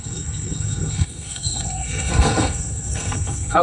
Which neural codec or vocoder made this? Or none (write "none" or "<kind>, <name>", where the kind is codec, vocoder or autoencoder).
codec, SNAC